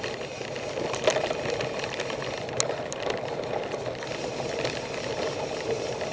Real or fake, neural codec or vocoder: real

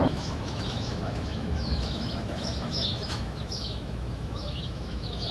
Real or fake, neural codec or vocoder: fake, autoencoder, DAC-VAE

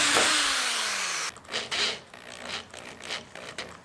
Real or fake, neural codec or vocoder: real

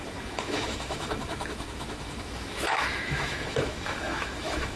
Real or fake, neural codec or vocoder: fake, autoencoder, DAC-VAE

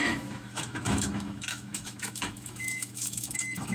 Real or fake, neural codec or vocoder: fake, autoencoder, DAC-VAE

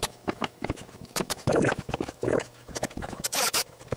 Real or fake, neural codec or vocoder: fake, autoencoder, DAC-VAE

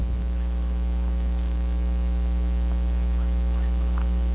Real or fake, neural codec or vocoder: fake, autoencoder, DAC-VAE